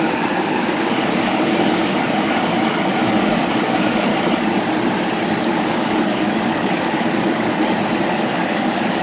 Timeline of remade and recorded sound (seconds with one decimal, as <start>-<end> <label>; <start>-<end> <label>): 0.0-4.1 remade; 4.1-5.4 recorded; 5.4-7.6 remade; 7.6-8.2 recorded; 8.2-9.0 remade